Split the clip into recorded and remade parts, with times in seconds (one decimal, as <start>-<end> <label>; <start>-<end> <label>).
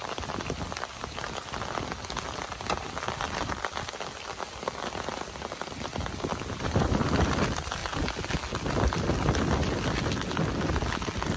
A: 0.0-11.4 recorded